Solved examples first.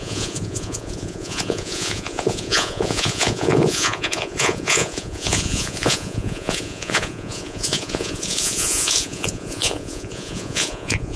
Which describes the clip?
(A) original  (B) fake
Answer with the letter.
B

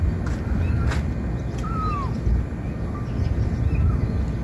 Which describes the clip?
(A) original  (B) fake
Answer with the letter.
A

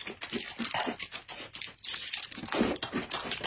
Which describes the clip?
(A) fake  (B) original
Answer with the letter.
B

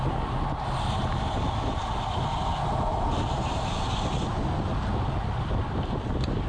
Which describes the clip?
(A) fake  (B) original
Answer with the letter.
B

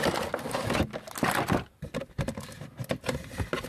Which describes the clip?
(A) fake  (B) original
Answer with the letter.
B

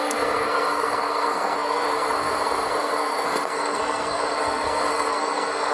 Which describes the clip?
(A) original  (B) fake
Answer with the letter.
B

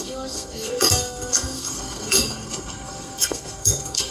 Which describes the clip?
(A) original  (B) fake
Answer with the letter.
B